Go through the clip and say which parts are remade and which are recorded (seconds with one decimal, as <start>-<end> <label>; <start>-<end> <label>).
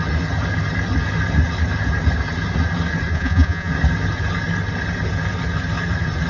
0.0-3.1 recorded; 3.1-3.7 remade; 3.7-6.3 recorded